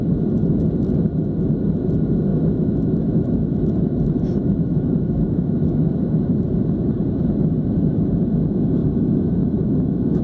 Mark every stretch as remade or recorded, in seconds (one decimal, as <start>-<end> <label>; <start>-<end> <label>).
0.0-2.3 recorded; 2.3-5.7 remade; 5.7-8.8 recorded; 8.8-10.2 remade